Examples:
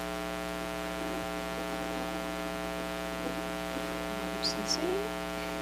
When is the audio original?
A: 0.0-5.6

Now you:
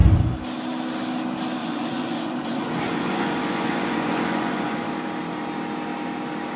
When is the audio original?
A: 0.0-1.6; 4.9-6.6

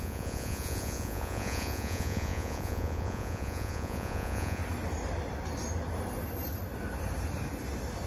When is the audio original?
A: 4.6-8.1

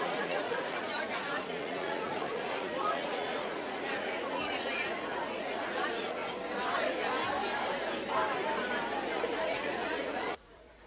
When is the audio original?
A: 6.2-9.1